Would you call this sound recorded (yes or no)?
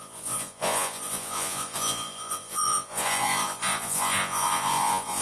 no